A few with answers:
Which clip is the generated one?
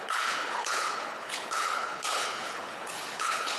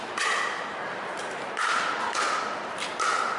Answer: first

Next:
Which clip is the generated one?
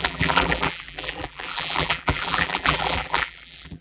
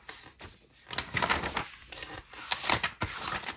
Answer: first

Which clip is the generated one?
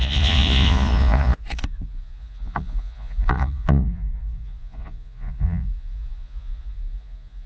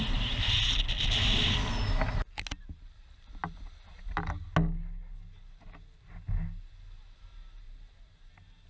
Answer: first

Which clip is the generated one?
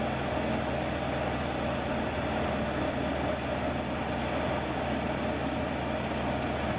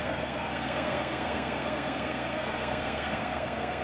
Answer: second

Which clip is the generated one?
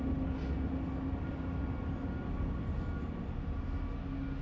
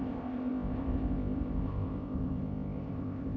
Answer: second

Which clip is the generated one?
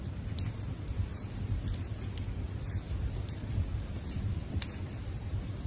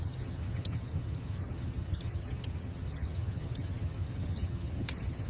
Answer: second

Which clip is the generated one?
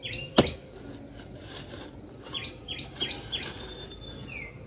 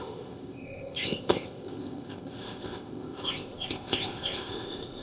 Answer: second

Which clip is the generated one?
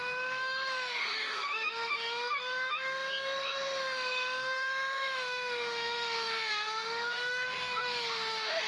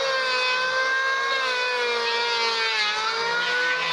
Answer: first